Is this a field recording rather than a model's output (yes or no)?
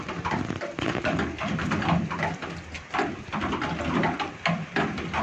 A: yes